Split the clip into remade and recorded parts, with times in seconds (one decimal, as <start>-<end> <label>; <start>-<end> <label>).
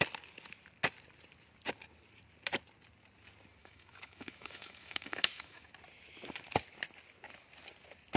0.0-3.6 recorded; 3.6-5.7 remade; 5.7-8.2 recorded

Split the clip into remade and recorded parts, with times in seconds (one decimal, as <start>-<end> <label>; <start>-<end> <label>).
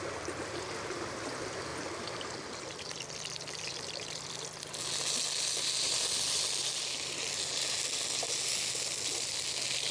0.0-9.9 recorded